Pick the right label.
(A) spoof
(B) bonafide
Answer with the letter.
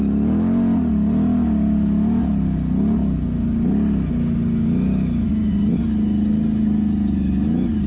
B